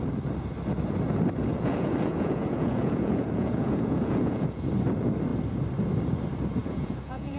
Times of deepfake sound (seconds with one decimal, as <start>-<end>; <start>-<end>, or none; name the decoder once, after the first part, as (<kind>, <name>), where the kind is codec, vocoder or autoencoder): 1.5-4.7 (vocoder, Vocos); 6.6-7.4